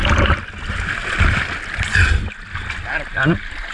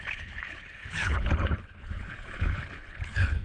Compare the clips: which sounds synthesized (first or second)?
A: second